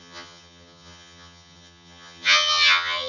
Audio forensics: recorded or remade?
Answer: remade